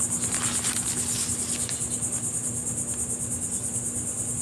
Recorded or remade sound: recorded